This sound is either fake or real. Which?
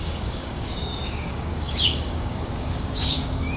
fake